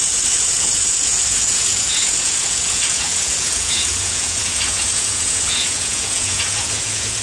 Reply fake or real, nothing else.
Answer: fake